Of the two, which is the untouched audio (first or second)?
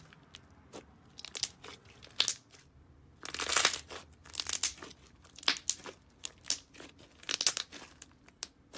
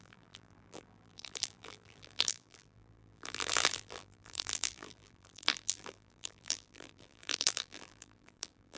first